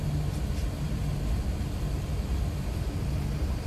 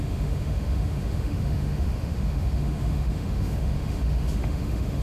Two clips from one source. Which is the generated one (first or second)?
second